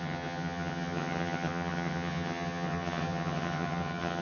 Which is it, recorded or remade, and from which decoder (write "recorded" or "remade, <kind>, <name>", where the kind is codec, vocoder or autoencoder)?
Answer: remade, vocoder, HiFi-GAN